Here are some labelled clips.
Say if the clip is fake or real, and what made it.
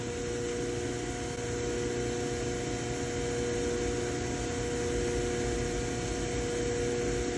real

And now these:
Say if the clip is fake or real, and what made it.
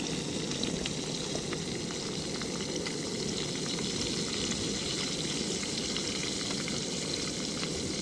real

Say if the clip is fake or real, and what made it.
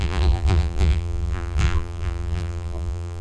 fake, vocoder, BigVGAN v2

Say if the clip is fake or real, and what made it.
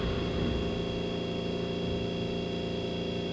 real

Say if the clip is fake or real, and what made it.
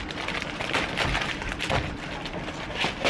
real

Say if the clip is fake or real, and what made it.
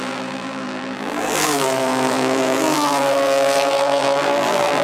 fake, vocoder, BigVGAN v2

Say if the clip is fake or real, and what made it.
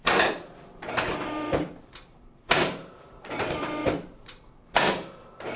fake, vocoder, BigVGAN v2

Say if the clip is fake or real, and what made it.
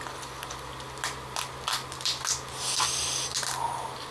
real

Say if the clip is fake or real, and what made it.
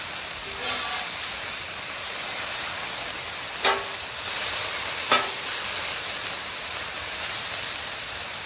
real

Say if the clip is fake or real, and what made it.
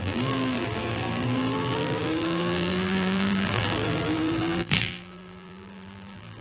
fake, vocoder, BigVGAN v2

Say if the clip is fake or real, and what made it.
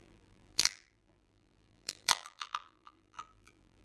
fake, vocoder, BigVGAN v2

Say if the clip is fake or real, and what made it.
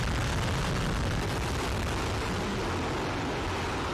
real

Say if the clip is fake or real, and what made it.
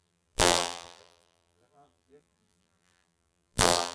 fake, vocoder, BigVGAN v2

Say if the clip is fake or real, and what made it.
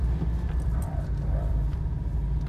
fake, vocoder, BigVGAN v2